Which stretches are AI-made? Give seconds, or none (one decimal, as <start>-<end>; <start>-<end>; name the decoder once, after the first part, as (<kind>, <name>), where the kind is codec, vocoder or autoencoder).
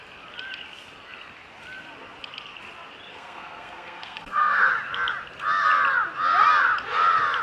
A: 3.1-4.7 (codec, SNAC)